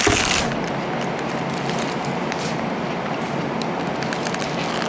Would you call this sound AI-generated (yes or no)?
no